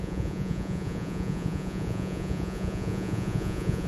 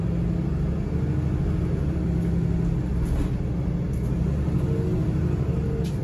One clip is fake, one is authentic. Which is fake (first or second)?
first